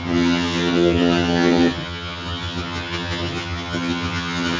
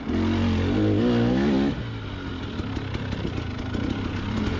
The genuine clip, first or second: second